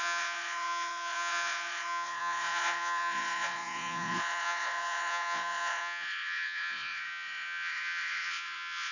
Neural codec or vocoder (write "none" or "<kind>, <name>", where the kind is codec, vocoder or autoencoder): vocoder, Vocos